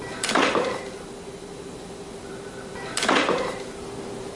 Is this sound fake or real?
real